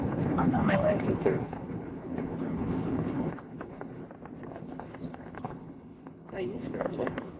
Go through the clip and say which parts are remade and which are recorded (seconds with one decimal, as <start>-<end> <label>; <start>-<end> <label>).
0.0-4.0 remade; 4.0-4.5 recorded; 4.5-7.4 remade